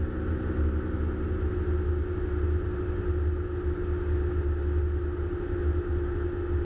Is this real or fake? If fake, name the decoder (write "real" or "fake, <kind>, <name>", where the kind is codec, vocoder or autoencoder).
real